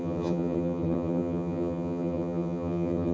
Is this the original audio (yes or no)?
no